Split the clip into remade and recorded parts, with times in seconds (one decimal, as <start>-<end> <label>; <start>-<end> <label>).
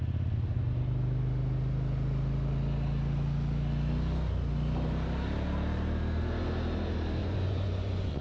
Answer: 0.0-7.2 recorded; 7.2-8.2 remade